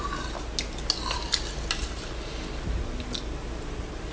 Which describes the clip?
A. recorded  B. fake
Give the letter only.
A